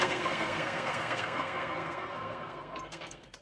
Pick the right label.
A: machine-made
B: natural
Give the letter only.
A